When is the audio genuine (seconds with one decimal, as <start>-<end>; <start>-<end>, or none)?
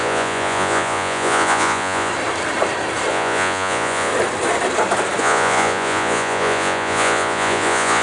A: 2.1-3.1; 4.1-5.2